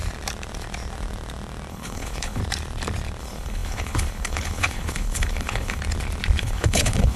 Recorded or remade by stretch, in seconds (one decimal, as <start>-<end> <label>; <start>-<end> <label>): 0.0-1.7 recorded; 1.7-2.4 remade; 2.4-3.2 recorded; 3.2-5.8 remade; 5.8-6.4 recorded; 6.4-7.2 remade

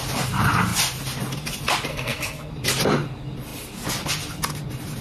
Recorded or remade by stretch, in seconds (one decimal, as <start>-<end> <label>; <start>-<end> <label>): 0.0-1.9 recorded; 1.9-2.5 remade; 2.5-5.0 recorded

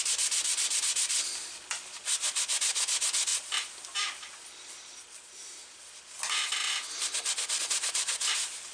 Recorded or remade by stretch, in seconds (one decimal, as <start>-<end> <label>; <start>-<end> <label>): 0.0-8.7 recorded

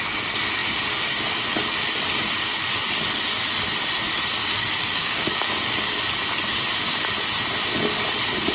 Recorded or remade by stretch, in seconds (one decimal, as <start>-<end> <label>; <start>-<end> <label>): 0.0-4.4 recorded; 4.4-6.0 remade; 6.0-8.5 recorded

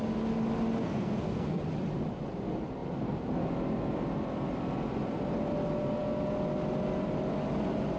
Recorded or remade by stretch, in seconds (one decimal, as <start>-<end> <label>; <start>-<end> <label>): 0.0-0.8 recorded; 0.8-1.6 remade; 1.6-8.0 recorded

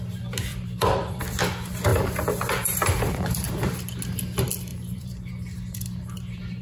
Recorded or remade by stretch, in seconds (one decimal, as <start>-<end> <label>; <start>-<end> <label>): 0.0-0.5 recorded; 0.5-1.2 remade; 1.2-1.9 recorded; 1.9-3.7 remade; 3.7-4.7 recorded; 4.7-5.3 remade; 5.3-6.6 recorded

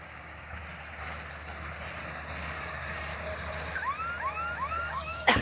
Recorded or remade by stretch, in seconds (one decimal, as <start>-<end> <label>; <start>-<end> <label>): 0.0-0.6 remade; 0.6-2.6 recorded; 2.6-3.1 remade; 3.1-4.7 recorded; 4.7-5.4 remade